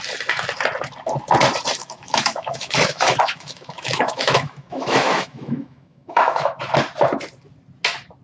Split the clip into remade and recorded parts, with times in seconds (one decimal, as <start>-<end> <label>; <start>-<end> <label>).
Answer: 0.0-1.8 recorded; 1.8-6.6 remade; 6.6-8.2 recorded